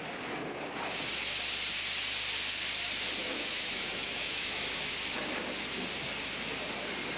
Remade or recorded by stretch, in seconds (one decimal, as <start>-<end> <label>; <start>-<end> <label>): 0.0-3.2 recorded; 3.2-4.9 remade; 4.9-7.2 recorded